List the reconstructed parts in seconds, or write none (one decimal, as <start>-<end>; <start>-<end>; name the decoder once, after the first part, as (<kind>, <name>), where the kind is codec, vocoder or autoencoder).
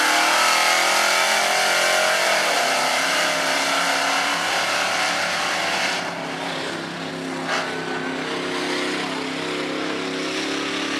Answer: 2.4-7.1 (vocoder, BigVGAN v2)